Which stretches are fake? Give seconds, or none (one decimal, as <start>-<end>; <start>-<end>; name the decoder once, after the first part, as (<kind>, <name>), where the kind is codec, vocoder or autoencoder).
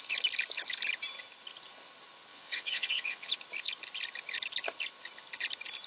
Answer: 2.3-3.3 (vocoder, WaveNeXt)